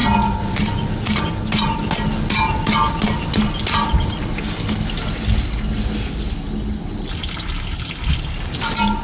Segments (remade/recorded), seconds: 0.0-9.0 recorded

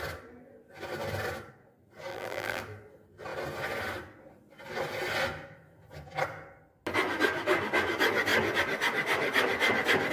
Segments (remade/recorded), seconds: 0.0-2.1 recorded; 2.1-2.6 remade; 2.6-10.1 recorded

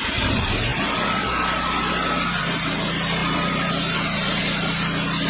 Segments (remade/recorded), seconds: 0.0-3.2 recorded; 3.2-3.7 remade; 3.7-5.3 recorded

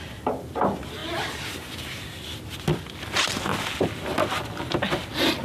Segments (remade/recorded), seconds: 0.0-5.4 recorded

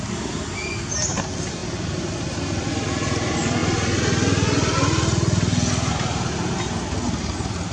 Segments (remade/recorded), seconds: 0.0-7.7 recorded